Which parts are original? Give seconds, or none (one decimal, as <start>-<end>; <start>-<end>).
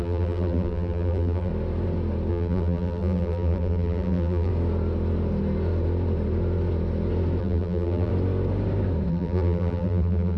1.5-2.3; 4.5-7.4; 8.1-9.1